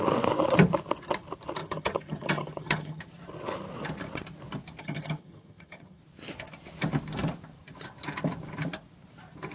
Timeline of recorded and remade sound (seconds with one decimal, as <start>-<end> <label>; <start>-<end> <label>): 0.0-1.6 recorded; 1.6-3.0 remade; 3.0-4.8 recorded; 4.8-6.0 remade; 6.0-9.5 recorded